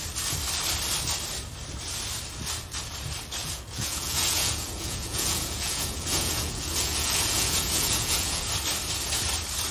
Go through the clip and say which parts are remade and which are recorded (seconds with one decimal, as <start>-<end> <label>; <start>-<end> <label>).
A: 0.0-3.4 recorded; 3.4-8.5 remade; 8.5-9.7 recorded